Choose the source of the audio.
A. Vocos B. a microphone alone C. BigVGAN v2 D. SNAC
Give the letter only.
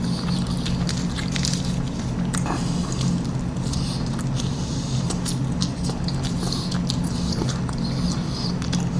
B